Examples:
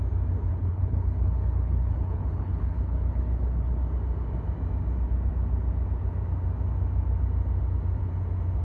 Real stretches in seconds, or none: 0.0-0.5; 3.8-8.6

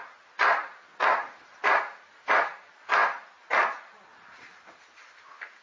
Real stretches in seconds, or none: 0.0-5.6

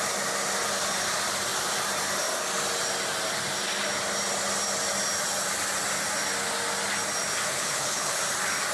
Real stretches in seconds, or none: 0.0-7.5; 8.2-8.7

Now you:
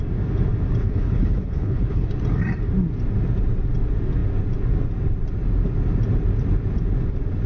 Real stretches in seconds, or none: 0.0-0.8; 2.1-7.5

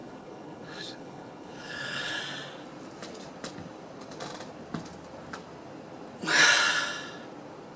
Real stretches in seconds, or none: 2.2-7.8

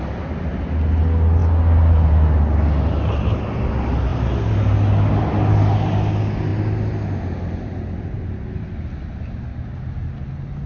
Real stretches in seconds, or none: 0.0-10.7

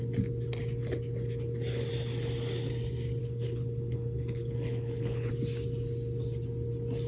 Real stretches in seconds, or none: 0.0-3.2; 5.3-7.1

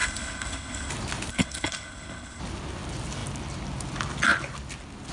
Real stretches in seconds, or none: 0.9-1.3; 2.4-5.1